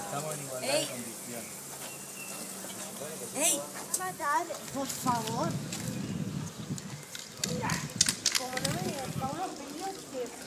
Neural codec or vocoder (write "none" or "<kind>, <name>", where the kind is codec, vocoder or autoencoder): none